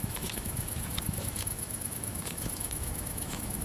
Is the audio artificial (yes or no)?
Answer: yes